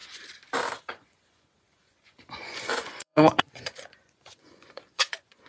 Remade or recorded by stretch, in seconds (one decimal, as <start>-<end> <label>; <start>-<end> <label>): 0.0-0.8 recorded; 0.8-5.5 remade